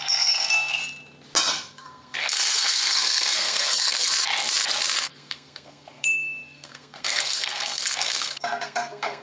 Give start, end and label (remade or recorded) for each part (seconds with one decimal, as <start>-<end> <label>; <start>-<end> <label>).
0.0-0.8 remade; 0.8-1.5 recorded; 1.5-4.1 remade; 4.1-5.0 recorded; 5.0-9.2 remade

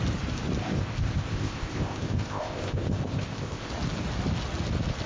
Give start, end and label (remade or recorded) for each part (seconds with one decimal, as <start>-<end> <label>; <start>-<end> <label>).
0.0-0.6 recorded; 0.6-3.7 remade; 3.7-5.1 recorded

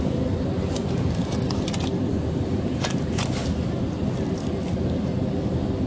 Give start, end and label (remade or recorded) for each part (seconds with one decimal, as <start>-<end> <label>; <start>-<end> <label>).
0.0-5.9 recorded

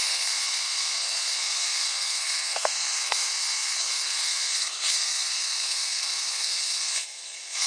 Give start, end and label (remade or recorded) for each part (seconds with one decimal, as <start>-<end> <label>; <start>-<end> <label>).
0.0-7.7 remade